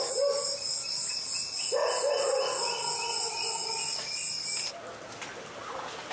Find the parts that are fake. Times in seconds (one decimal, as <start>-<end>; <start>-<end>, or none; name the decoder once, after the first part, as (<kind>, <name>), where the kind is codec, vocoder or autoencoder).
none